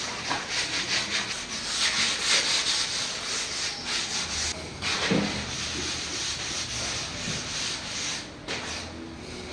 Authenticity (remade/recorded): recorded